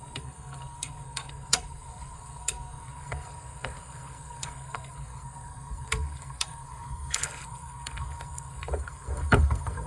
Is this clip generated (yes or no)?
yes